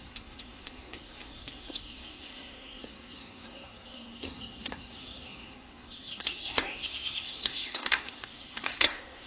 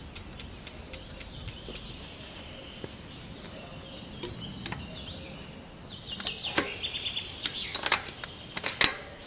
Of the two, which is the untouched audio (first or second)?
second